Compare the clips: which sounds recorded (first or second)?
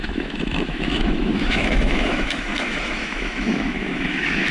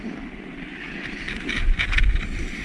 second